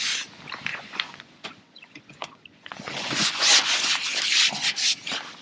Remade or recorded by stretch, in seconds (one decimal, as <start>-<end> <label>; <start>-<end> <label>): 0.0-0.7 recorded; 0.7-3.9 remade; 3.9-5.4 recorded